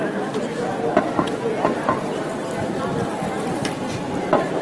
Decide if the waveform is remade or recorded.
recorded